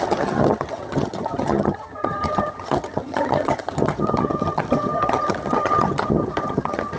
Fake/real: fake